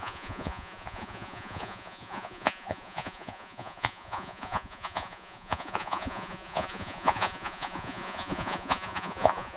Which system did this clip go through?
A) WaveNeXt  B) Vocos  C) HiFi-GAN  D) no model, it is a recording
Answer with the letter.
B